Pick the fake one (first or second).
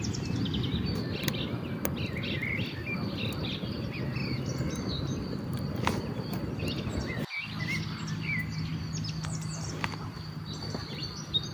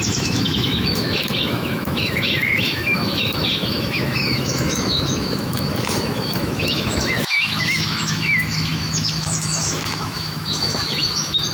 second